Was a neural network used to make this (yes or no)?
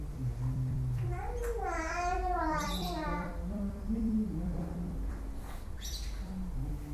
yes